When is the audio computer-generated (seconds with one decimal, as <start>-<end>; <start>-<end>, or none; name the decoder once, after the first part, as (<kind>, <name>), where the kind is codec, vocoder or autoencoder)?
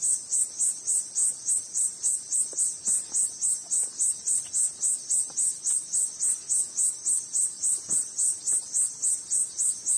none